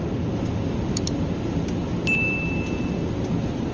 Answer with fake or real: real